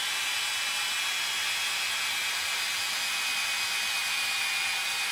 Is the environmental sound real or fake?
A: real